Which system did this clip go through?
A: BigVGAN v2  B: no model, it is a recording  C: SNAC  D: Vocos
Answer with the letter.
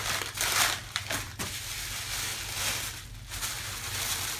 B